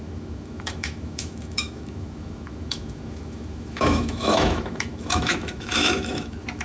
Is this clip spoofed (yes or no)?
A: yes